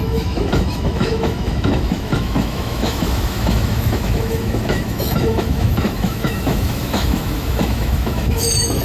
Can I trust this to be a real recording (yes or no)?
no